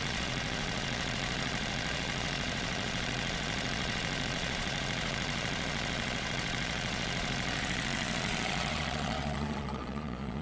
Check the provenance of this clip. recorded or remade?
remade